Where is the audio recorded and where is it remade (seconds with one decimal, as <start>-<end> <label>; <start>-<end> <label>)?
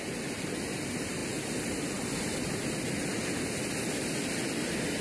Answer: 0.0-5.0 recorded